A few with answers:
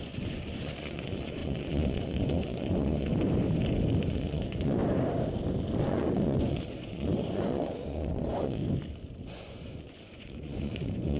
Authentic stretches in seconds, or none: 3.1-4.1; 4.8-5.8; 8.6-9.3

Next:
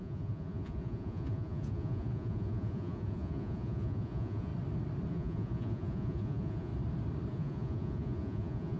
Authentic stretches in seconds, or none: 4.5-5.1; 6.7-7.3

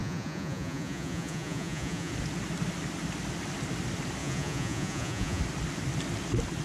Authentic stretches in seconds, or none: 2.1-4.2; 5.4-6.6

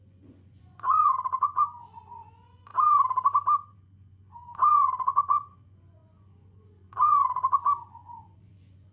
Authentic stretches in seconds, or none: 2.7-3.8

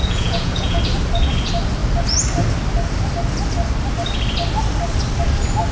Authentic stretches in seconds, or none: 0.8-5.7

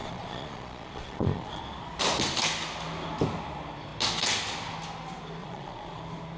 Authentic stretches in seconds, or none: 1.6-5.4; 6.0-6.4

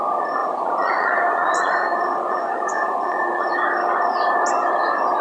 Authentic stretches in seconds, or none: 0.0-0.4; 3.5-5.2

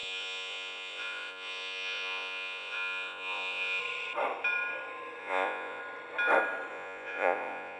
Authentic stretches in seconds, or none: 3.8-5.2; 5.8-6.7